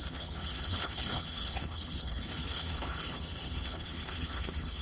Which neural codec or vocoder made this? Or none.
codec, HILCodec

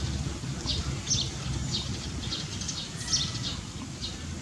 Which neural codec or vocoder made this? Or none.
none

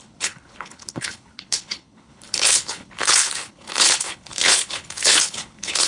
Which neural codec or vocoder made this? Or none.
codec, HILCodec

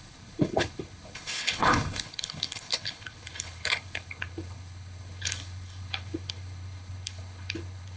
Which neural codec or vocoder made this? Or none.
codec, HILCodec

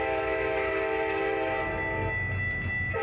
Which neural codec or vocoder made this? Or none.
none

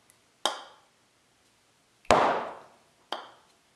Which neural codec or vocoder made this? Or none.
none